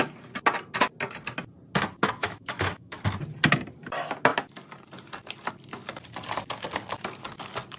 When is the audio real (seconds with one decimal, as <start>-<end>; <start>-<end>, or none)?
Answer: 0.0-2.2; 3.0-7.8

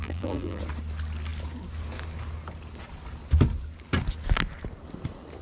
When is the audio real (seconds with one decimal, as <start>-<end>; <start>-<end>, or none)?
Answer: 0.6-5.4

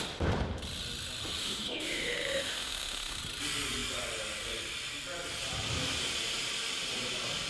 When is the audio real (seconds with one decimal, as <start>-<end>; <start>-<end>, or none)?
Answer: 0.0-1.4; 3.2-7.5

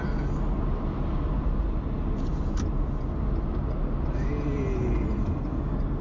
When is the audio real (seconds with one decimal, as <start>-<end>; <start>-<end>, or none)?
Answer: 0.0-6.0

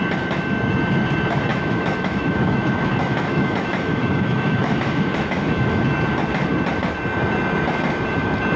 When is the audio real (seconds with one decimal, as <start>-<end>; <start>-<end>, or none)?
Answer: 0.0-1.5; 5.8-8.6

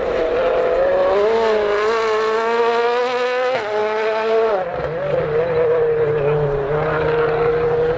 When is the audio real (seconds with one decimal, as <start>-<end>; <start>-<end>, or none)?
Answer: 0.0-8.0

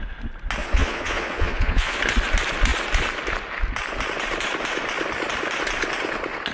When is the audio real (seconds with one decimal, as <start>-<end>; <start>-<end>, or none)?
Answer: 0.0-0.6; 2.0-6.5